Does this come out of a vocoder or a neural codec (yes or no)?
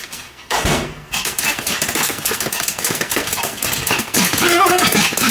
yes